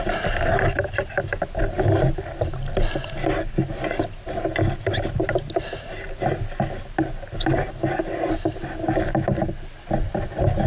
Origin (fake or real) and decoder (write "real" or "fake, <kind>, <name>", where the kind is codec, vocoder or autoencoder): real